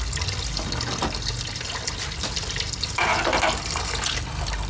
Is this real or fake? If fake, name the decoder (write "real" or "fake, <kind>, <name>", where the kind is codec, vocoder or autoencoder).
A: real